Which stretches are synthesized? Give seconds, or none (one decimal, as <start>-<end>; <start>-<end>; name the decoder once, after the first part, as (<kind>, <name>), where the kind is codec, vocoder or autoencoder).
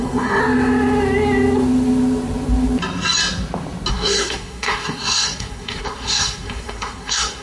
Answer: 0.0-0.4 (codec, SNAC); 3.9-7.4